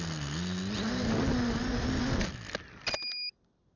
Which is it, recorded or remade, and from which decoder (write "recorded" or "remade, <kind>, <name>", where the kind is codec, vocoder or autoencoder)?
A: recorded